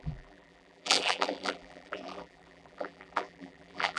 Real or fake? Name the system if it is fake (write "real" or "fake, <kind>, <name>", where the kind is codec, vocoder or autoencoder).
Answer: fake, vocoder, BigVGAN v2